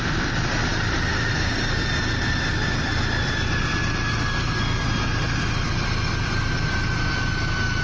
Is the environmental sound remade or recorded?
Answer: recorded